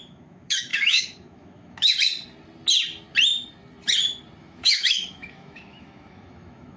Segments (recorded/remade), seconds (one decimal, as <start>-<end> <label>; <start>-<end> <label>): 0.0-1.9 remade; 1.9-4.4 recorded; 4.4-6.8 remade

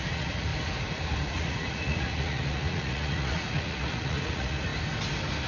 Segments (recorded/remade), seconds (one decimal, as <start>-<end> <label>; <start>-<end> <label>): 0.0-0.5 remade; 0.5-1.2 recorded; 1.2-4.7 remade; 4.7-5.5 recorded

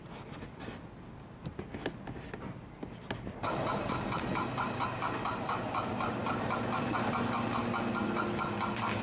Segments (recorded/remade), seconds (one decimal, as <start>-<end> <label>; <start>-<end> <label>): 0.0-9.0 recorded

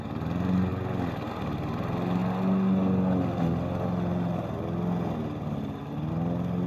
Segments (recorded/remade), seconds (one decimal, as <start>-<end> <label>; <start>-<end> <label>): 0.0-6.7 recorded

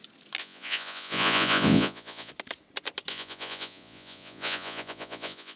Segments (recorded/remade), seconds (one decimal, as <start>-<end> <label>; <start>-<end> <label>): 0.0-0.4 recorded; 0.4-2.3 remade; 2.3-3.1 recorded; 3.1-5.6 remade

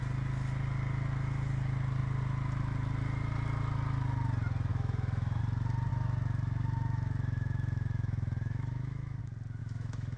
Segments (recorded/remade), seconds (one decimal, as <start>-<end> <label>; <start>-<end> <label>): 0.0-4.7 recorded; 4.7-5.4 remade; 5.4-5.9 recorded; 5.9-9.2 remade; 9.2-9.6 recorded; 9.6-10.2 remade